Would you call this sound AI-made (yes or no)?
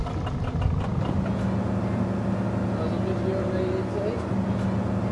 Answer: no